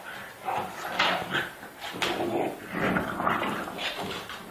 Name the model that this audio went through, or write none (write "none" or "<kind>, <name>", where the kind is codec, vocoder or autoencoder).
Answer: none